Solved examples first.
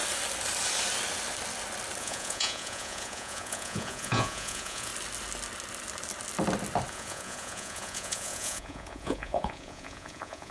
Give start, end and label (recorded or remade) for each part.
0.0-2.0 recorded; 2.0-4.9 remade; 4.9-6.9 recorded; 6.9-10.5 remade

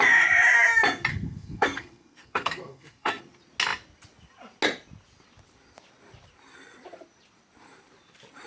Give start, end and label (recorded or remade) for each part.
0.0-1.1 recorded; 1.1-3.2 remade; 3.2-8.5 recorded